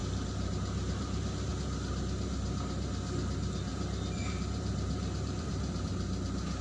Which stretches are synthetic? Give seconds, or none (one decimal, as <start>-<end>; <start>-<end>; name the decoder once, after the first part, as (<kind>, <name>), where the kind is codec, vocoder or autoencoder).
0.0-1.5 (vocoder, BigVGAN v2); 3.7-5.8